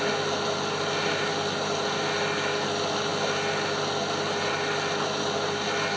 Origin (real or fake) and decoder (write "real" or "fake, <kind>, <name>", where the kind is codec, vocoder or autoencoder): real